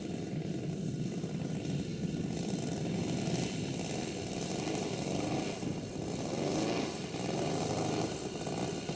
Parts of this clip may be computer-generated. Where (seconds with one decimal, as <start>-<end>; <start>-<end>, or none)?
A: none